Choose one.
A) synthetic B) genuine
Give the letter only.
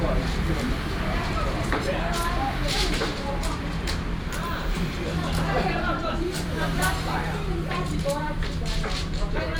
A